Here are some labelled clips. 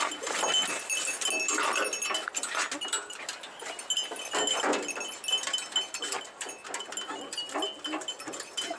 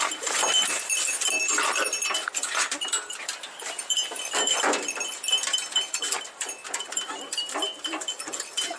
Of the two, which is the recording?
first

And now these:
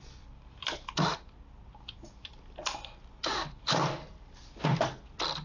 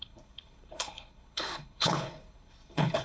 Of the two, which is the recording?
first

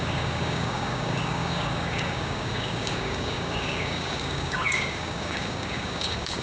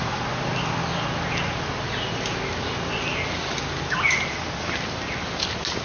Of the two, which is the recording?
second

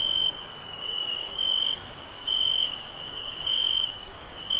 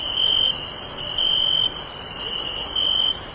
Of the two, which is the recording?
second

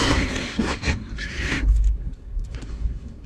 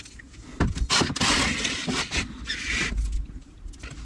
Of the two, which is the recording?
second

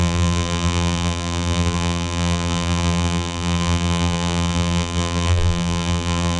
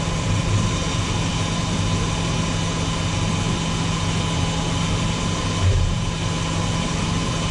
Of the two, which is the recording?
second